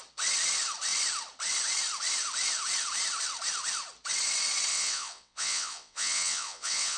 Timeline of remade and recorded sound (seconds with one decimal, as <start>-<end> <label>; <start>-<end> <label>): 0.0-4.7 recorded; 4.7-7.0 remade